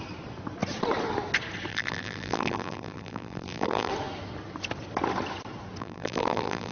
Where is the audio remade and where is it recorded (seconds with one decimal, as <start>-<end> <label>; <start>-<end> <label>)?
0.0-1.7 recorded; 1.7-3.9 remade; 3.9-5.8 recorded; 5.8-6.7 remade